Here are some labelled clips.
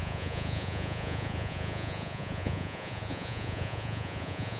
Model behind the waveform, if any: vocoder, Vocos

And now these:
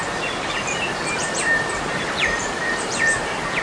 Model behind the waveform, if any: vocoder, BigVGAN v2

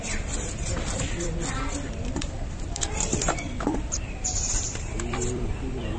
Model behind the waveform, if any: vocoder, BigVGAN v2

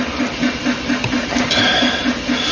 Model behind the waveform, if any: none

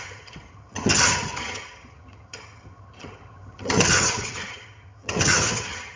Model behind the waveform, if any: vocoder, HiFi-GAN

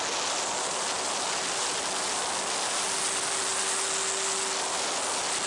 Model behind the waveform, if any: none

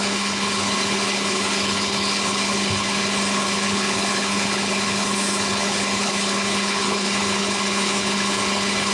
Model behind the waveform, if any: codec, HILCodec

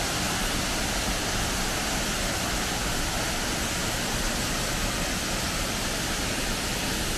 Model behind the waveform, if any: none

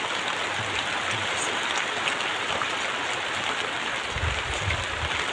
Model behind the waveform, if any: none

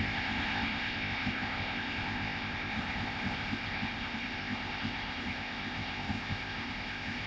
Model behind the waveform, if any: codec, ZipCodec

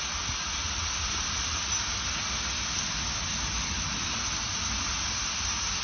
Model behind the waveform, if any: none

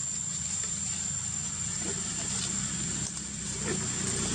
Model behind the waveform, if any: none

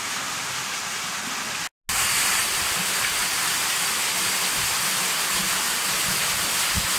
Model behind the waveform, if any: none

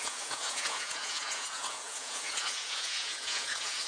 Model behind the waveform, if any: vocoder, Vocos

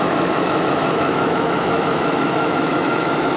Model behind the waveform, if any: autoencoder, DAC-VAE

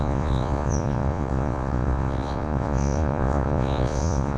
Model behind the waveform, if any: vocoder, Vocos